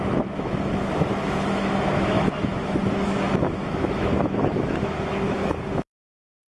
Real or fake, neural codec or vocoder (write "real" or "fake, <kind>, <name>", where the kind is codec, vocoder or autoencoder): fake, autoencoder, DAC-VAE